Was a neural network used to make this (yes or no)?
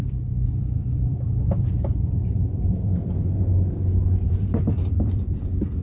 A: yes